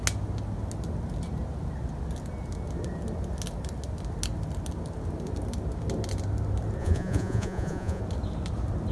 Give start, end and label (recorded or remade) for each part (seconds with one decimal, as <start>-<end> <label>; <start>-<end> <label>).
0.0-6.8 recorded; 6.8-8.0 remade; 8.0-8.9 recorded